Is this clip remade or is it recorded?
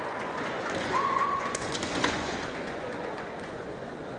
remade